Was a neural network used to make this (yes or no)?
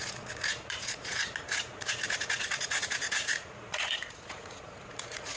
yes